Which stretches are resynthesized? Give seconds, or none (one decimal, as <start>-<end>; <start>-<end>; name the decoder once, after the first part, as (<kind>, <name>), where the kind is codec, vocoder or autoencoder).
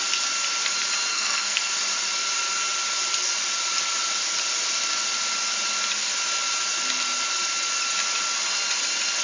1.1-1.7 (codec, SNAC)